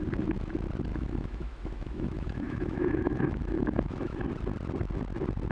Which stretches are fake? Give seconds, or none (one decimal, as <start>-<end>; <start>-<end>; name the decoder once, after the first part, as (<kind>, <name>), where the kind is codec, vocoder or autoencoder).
0.9-4.2 (autoencoder, DAC-VAE)

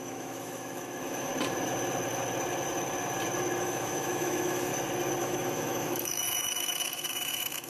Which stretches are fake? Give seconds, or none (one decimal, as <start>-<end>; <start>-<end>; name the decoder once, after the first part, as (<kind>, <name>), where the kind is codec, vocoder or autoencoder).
0.0-1.3 (autoencoder, DAC-VAE); 3.6-4.7; 5.2-7.7

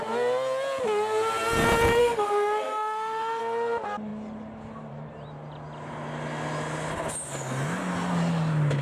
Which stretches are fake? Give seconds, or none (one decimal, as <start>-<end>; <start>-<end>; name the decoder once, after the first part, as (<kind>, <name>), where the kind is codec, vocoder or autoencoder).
2.0-3.4 (autoencoder, DAC-VAE)

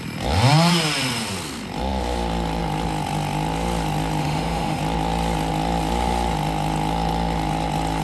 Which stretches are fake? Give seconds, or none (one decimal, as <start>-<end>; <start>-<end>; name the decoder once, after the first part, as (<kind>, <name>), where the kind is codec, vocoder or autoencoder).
4.2-4.8 (autoencoder, DAC-VAE)

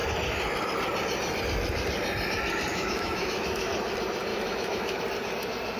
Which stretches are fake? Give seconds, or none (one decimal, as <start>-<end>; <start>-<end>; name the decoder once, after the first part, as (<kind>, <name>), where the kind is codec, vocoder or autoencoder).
2.7-3.7 (autoencoder, DAC-VAE); 4.3-5.0

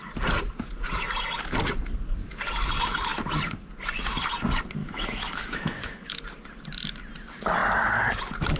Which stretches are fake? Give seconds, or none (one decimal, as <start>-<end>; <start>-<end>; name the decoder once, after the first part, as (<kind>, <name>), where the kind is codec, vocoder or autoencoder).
4.8-6.2 (autoencoder, DAC-VAE)

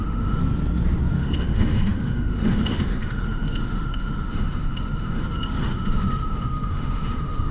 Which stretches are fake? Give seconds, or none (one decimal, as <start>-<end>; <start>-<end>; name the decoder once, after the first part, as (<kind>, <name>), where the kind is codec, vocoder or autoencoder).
0.0-0.4 (autoencoder, DAC-VAE); 1.1-7.5

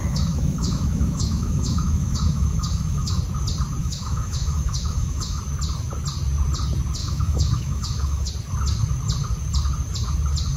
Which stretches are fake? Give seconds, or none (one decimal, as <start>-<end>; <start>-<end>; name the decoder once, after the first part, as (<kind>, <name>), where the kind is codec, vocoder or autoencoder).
0.0-3.2 (autoencoder, DAC-VAE); 3.8-5.4; 7.0-8.3